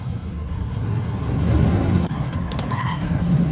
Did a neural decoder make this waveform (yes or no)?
yes